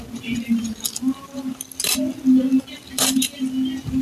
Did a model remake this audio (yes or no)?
no